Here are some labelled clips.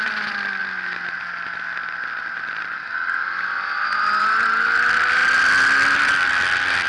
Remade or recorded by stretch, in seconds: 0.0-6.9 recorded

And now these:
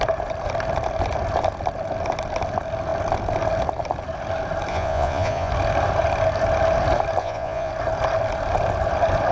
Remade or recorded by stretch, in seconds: 0.0-4.7 recorded; 4.7-5.5 remade; 5.5-7.2 recorded; 7.2-7.7 remade; 7.7-9.3 recorded

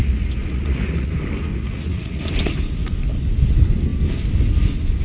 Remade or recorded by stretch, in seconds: 0.0-1.1 remade; 1.1-1.5 recorded; 1.5-2.2 remade; 2.2-5.0 recorded

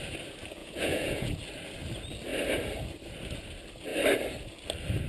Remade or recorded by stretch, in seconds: 0.0-0.6 recorded; 0.6-1.3 remade; 1.3-5.1 recorded

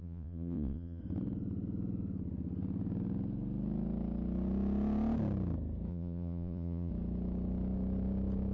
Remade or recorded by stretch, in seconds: 0.0-1.0 remade; 1.0-5.9 recorded; 5.9-6.9 remade; 6.9-8.5 recorded

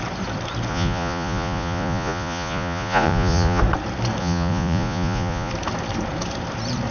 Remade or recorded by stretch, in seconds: 0.0-0.7 recorded; 0.7-3.6 remade; 3.6-4.2 recorded; 4.2-5.5 remade; 5.5-6.9 recorded